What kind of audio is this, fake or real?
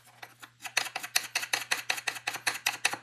real